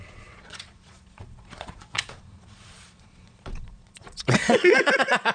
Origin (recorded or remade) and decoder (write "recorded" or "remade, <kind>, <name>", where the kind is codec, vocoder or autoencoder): remade, vocoder, Vocos